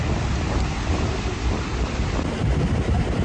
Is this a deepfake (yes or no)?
no